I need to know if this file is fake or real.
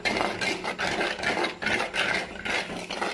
real